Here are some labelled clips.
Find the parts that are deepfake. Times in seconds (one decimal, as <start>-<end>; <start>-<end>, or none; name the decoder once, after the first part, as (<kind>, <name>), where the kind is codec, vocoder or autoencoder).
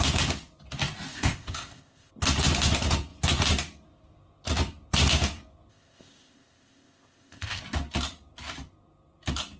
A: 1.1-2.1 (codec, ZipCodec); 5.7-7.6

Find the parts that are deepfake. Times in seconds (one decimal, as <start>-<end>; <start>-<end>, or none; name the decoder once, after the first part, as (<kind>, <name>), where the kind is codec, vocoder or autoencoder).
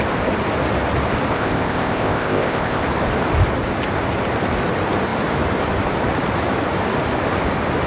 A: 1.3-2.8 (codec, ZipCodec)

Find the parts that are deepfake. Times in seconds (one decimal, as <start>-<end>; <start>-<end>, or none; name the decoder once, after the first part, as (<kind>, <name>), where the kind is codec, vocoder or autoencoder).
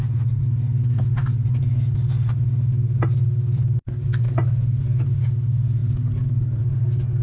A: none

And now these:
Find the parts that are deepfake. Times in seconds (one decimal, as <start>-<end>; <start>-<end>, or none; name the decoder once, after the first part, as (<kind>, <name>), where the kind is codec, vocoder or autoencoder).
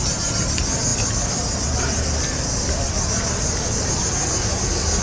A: none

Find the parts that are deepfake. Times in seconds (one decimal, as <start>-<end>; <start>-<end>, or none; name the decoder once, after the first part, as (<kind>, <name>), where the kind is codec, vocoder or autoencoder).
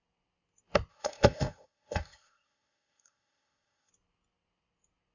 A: 0.9-3.9 (codec, ZipCodec)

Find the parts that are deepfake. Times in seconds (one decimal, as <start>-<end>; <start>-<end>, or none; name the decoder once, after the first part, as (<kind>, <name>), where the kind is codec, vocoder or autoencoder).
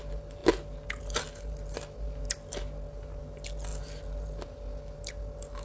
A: none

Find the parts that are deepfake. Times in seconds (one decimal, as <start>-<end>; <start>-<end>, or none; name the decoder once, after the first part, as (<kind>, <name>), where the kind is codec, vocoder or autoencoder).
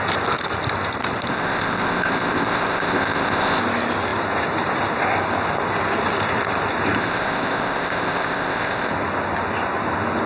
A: 1.3-3.6 (codec, ZipCodec); 7.0-8.9